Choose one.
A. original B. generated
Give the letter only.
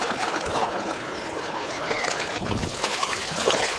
B